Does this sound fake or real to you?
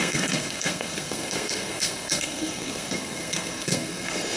fake